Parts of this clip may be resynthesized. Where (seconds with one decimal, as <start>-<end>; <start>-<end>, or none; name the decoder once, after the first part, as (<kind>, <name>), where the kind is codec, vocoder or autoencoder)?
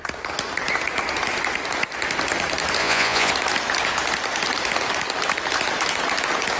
2.8-3.3 (vocoder, Vocos)